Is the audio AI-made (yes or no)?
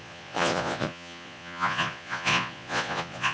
yes